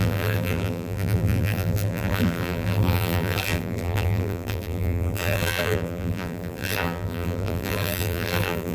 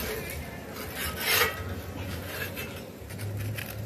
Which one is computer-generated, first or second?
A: first